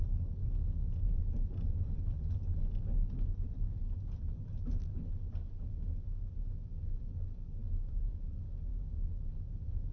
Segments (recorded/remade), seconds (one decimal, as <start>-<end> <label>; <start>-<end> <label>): 0.0-0.4 recorded; 0.4-1.2 remade; 1.2-7.6 recorded; 7.6-8.1 remade; 8.1-8.7 recorded; 8.7-9.9 remade